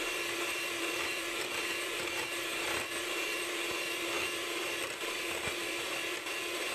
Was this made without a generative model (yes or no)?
no